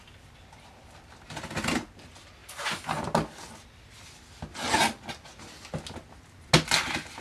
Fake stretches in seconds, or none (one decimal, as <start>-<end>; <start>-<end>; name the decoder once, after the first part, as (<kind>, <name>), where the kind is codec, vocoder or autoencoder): none